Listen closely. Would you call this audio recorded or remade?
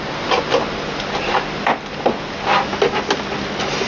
recorded